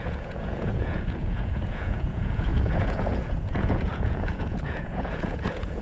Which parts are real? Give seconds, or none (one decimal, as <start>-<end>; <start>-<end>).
none